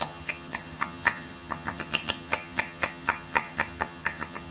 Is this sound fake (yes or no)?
yes